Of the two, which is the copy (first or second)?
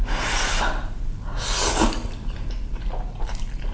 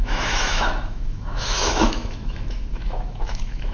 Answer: second